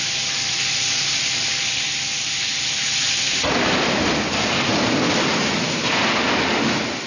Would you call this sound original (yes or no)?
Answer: yes